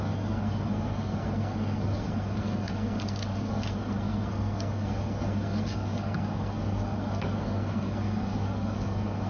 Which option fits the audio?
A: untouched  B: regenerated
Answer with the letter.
B